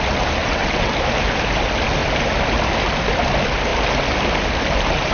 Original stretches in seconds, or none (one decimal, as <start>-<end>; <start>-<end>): 0.0-0.4; 0.9-5.1